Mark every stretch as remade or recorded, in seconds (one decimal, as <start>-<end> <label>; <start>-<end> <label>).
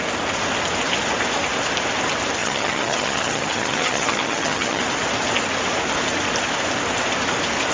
0.0-2.4 recorded; 2.4-4.8 remade; 4.8-7.7 recorded